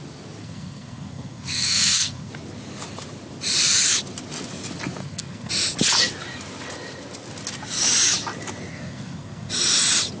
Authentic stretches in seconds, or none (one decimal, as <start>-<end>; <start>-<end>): 0.0-0.4; 2.3-5.0; 5.5-8.7; 9.5-10.2